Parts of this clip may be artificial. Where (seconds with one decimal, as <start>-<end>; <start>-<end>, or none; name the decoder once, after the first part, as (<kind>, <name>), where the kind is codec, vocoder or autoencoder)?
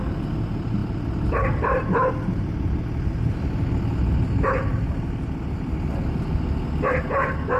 none